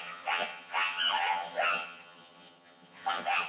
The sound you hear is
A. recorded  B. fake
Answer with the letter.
B